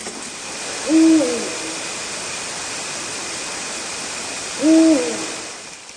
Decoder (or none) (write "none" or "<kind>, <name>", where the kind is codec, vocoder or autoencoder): none